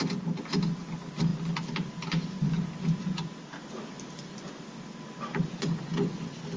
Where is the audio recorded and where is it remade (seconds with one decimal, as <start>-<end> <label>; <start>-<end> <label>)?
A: 0.0-6.6 recorded